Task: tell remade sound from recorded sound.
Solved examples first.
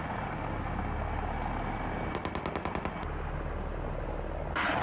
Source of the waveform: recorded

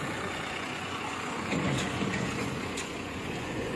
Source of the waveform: remade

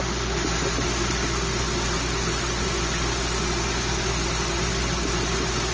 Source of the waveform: recorded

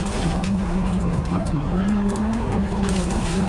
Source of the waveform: remade